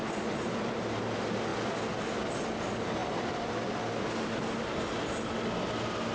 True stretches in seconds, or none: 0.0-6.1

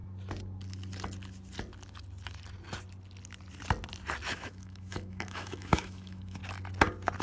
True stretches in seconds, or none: 0.0-4.3; 6.4-7.2